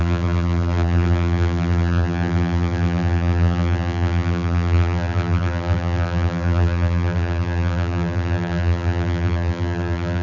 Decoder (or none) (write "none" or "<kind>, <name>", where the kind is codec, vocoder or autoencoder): vocoder, BigVGAN v2